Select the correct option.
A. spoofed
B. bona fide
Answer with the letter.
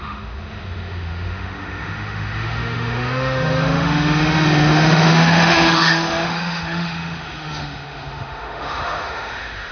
A